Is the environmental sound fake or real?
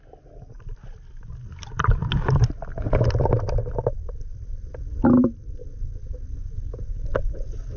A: real